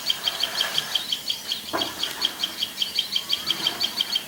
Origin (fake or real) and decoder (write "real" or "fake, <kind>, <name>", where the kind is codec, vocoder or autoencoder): fake, vocoder, BigVGAN v2